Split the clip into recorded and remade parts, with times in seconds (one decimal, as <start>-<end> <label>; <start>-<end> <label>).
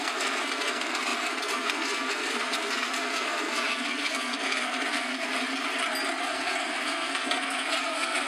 0.0-5.3 remade; 5.3-6.2 recorded; 6.2-8.3 remade